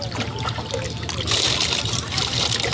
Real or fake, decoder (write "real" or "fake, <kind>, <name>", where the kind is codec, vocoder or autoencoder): real